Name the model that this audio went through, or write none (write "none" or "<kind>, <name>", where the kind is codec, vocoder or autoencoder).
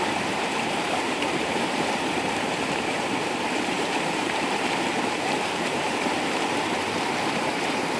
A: vocoder, BigVGAN v2